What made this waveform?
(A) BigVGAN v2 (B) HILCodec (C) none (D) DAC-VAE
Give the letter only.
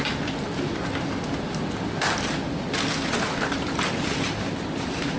A